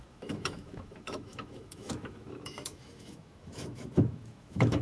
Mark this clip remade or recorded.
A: remade